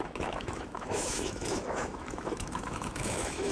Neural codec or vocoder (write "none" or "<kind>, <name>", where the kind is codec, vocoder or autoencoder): autoencoder, DAC-VAE